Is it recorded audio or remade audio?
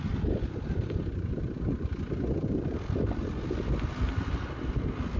recorded